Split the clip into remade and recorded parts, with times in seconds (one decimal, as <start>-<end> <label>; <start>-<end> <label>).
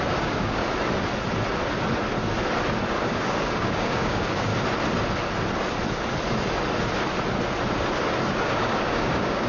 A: 0.0-0.6 remade; 0.6-2.9 recorded; 2.9-4.5 remade; 4.5-8.4 recorded; 8.4-9.5 remade